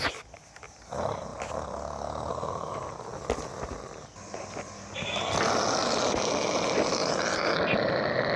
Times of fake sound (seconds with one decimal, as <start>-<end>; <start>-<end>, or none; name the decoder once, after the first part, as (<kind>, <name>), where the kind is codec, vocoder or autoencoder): none

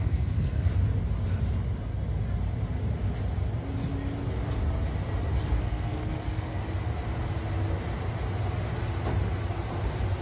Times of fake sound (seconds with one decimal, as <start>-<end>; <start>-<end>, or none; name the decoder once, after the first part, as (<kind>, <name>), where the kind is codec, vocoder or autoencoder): 0.0-0.7 (codec, SNAC); 5.6-6.6

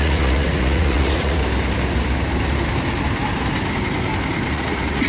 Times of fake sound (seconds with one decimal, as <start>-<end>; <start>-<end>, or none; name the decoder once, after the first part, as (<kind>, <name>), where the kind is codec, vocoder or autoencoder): 0.0-1.4 (vocoder, Vocos); 4.5-5.1